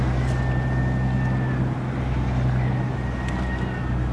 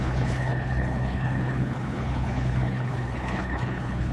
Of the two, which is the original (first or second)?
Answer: first